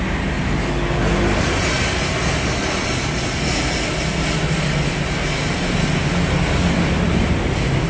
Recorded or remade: recorded